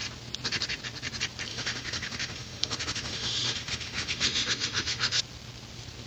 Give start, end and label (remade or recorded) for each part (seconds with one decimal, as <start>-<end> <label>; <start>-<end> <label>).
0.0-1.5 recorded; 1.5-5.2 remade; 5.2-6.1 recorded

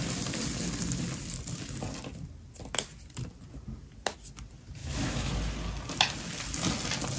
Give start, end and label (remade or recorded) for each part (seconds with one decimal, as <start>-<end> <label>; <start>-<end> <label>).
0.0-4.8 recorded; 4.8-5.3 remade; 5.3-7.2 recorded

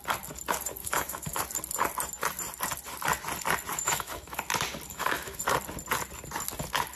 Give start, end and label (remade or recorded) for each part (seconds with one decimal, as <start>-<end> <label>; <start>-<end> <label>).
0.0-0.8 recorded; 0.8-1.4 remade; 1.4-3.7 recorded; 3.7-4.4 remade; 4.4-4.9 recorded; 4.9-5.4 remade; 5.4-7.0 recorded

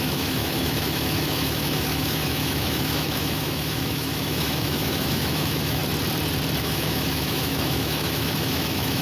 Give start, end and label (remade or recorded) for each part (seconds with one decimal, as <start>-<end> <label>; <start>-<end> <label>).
0.0-5.8 remade; 5.8-6.6 recorded; 6.6-9.0 remade

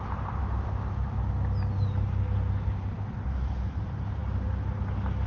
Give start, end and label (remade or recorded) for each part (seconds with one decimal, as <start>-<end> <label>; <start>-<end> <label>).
0.0-0.4 recorded; 0.4-1.2 remade; 1.2-5.3 recorded

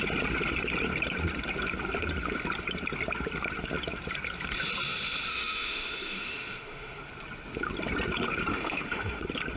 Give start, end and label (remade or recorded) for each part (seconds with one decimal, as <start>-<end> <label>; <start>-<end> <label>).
0.0-5.3 recorded; 5.3-7.0 remade; 7.0-8.5 recorded; 8.5-9.2 remade; 9.2-9.6 recorded